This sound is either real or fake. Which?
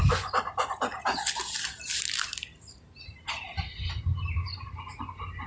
real